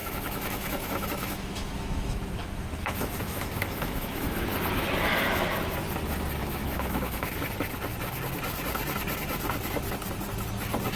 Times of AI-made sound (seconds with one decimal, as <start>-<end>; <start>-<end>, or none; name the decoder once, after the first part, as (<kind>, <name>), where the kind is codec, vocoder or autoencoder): 0.0-4.4 (autoencoder, DAC-VAE); 6.4-7.4